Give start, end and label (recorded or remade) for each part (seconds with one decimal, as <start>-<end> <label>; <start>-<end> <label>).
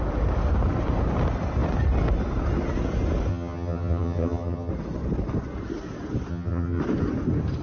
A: 0.0-3.3 recorded; 3.3-4.7 remade; 4.7-6.3 recorded; 6.3-6.8 remade; 6.8-7.6 recorded